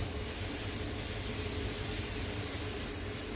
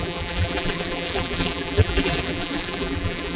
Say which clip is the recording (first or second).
first